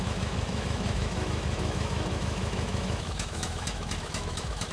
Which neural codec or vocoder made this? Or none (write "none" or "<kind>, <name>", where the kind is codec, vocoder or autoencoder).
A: autoencoder, DAC-VAE